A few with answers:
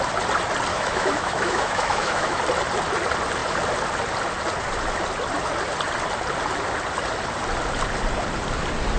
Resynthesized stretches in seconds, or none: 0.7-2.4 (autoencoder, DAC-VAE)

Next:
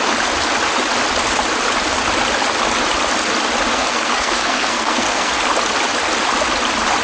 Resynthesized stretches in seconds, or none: 3.7-5.3 (codec, SNAC)

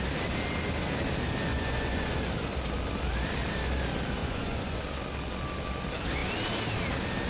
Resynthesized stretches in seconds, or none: 1.5-2.1 (vocoder, Vocos); 4.2-4.8

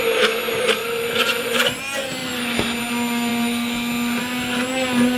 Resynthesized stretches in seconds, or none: 0.8-1.8 (vocoder, BigVGAN v2)

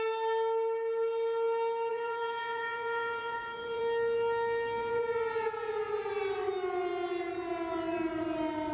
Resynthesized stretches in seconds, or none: 1.9-3.8 (vocoder, Vocos); 4.8-6.1